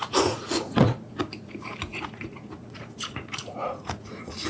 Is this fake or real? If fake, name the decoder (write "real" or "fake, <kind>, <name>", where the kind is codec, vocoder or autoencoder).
fake, vocoder, Vocos